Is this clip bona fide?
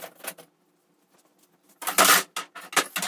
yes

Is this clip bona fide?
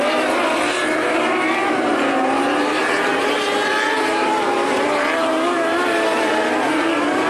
no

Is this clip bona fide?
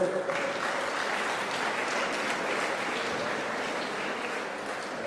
yes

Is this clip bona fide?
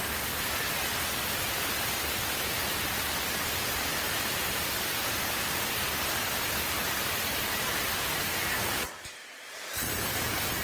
no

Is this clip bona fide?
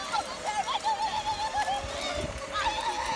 yes